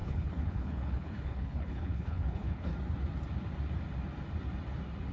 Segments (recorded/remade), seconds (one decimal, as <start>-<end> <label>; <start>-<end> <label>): 0.0-2.7 remade; 2.7-5.1 recorded

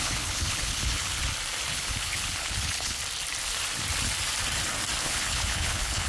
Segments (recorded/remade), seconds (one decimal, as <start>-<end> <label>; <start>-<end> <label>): 0.0-1.2 remade; 1.2-1.7 recorded; 1.7-3.0 remade; 3.0-5.0 recorded; 5.0-6.1 remade

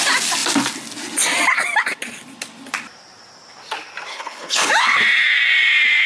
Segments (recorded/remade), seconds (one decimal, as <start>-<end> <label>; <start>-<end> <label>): 0.0-4.1 recorded; 4.1-4.7 remade; 4.7-6.1 recorded

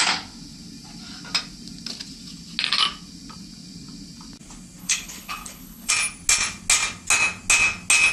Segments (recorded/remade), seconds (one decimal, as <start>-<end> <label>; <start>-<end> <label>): 0.0-4.8 recorded; 4.8-5.9 remade; 5.9-8.1 recorded

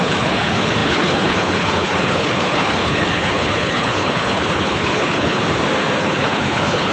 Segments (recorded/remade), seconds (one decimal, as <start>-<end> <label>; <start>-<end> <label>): 0.0-5.4 remade; 5.4-6.0 recorded; 6.0-6.9 remade

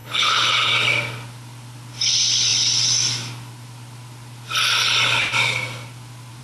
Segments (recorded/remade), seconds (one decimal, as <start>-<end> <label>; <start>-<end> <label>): 0.0-0.7 remade; 0.7-6.4 recorded